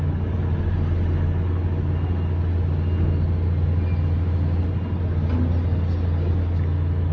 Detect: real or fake real